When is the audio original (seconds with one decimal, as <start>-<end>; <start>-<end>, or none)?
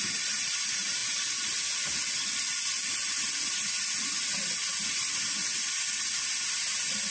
0.0-7.1